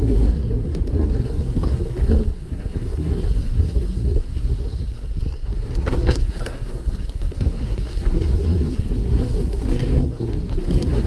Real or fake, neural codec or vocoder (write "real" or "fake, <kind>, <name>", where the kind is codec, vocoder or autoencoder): fake, codec, SNAC